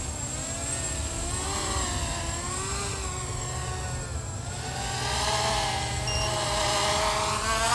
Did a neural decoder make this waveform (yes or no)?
no